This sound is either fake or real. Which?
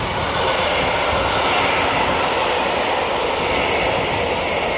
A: real